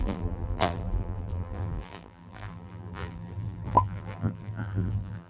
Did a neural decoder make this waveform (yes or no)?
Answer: yes